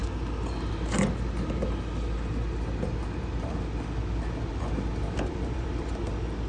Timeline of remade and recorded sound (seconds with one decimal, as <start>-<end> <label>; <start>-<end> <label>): 0.0-4.9 recorded; 4.9-6.1 remade; 6.1-6.5 recorded